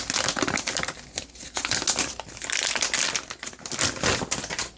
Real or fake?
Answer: real